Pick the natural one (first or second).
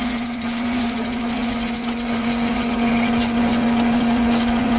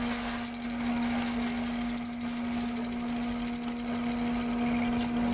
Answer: second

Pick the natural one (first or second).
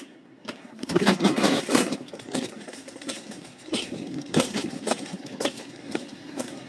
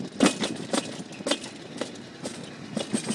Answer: second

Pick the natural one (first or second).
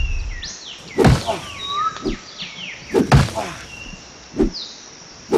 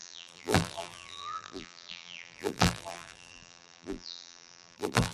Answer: first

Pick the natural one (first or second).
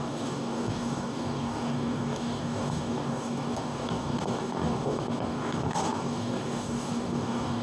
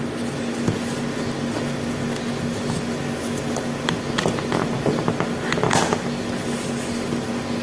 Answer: second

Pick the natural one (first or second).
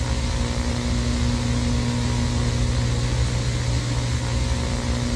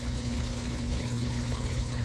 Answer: first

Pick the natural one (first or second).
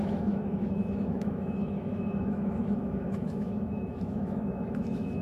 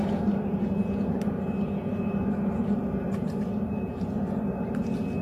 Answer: second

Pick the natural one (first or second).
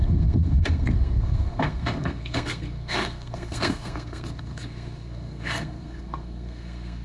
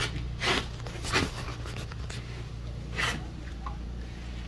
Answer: second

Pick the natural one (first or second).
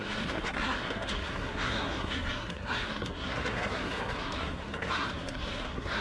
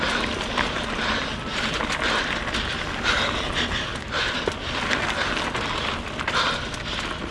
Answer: second